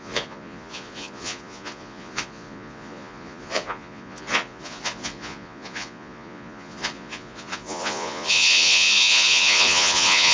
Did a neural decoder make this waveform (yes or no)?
yes